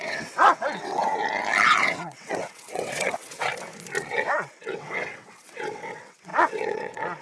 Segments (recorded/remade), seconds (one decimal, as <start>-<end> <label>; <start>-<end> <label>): 0.0-1.2 remade; 1.2-1.8 recorded; 1.8-3.5 remade; 3.5-4.1 recorded; 4.1-7.2 remade